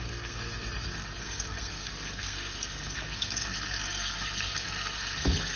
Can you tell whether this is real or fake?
fake